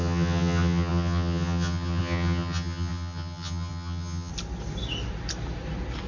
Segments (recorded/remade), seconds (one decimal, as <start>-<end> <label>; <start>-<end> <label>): 0.0-4.3 remade; 4.3-6.1 recorded